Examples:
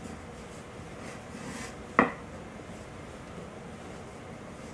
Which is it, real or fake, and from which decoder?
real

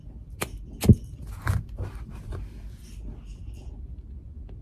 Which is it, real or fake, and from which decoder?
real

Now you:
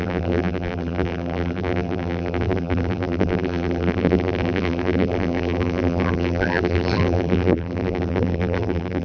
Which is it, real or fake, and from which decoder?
fake, vocoder, BigVGAN v2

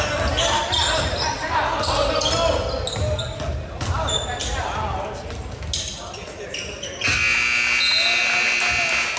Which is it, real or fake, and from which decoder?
real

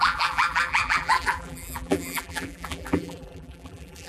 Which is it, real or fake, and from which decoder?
fake, vocoder, BigVGAN v2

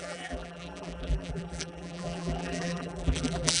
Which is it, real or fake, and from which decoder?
fake, vocoder, BigVGAN v2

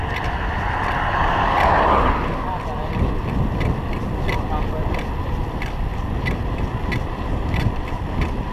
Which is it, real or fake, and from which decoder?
real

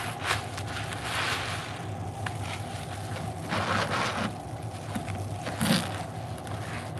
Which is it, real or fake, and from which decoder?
real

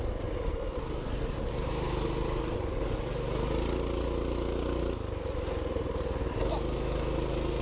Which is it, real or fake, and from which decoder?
real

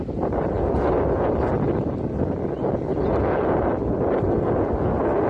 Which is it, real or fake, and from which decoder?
real